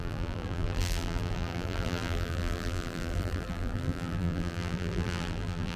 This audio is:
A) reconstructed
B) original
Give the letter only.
A